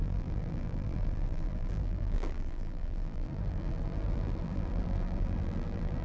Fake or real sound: fake